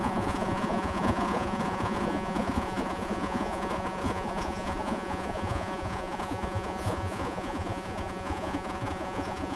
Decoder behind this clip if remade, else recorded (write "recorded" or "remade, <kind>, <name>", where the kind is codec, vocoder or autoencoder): remade, vocoder, Vocos